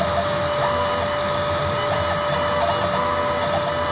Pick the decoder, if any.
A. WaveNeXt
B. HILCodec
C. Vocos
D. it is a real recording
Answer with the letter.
D